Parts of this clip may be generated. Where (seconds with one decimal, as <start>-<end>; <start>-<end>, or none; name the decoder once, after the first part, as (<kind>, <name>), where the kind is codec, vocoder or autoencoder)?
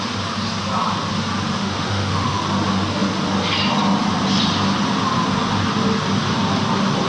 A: 1.6-2.4 (autoencoder, DAC-VAE)